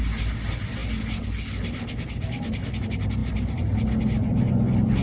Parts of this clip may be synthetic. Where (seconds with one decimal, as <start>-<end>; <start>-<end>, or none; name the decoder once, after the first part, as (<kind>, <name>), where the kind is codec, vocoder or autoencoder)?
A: none